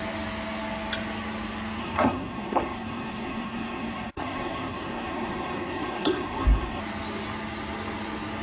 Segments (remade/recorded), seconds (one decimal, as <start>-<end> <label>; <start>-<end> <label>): 0.0-1.8 recorded; 1.8-6.8 remade; 6.8-8.4 recorded